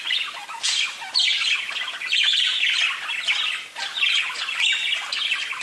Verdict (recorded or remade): recorded